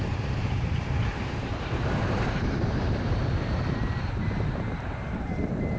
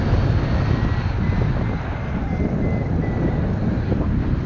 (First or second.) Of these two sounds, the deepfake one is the first